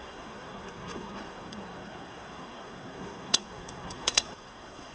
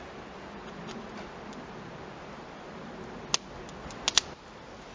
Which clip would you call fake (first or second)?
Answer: first